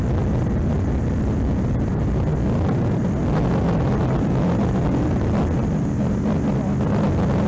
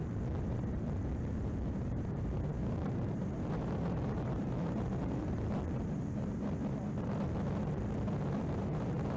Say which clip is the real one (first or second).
first